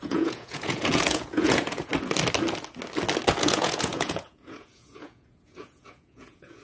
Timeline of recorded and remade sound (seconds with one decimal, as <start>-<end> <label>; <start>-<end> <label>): 0.0-1.9 remade; 1.9-3.4 recorded; 3.4-6.6 remade